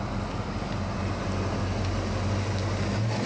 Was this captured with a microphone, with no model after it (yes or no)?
yes